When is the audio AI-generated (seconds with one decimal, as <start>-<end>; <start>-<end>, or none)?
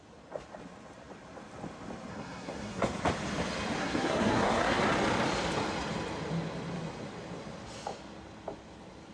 2.1-3.0; 3.8-4.8